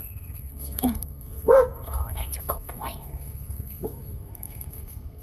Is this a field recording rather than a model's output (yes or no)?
no